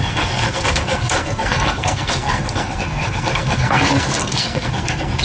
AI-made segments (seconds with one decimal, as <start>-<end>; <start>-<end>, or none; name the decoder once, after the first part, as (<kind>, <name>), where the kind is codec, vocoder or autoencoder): 0.0-5.2 (codec, SNAC)